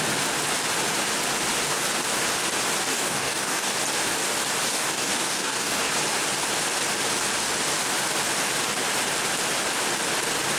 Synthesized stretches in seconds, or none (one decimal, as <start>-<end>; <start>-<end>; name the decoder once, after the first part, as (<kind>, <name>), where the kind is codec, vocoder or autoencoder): 2.9-3.7 (codec, DAC); 4.7-5.9